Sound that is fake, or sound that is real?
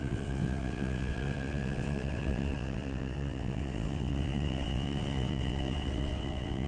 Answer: fake